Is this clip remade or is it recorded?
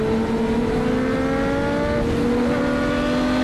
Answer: recorded